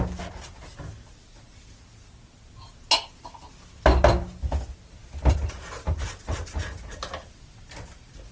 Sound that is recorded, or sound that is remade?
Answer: recorded